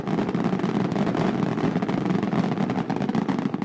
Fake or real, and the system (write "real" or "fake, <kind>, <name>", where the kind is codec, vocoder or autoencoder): real